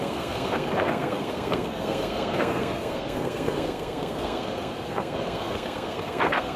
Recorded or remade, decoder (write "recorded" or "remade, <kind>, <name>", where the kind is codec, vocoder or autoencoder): remade, codec, SNAC